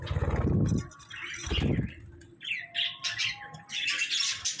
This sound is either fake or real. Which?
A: real